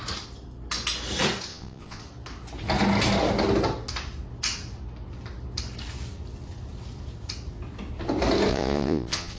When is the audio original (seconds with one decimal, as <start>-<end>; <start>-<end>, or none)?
0.0-1.5; 2.0-8.5